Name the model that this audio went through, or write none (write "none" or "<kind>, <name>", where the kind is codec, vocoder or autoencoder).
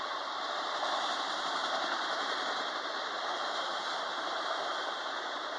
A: vocoder, BigVGAN v2